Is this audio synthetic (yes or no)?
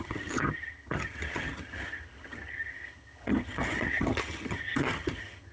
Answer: yes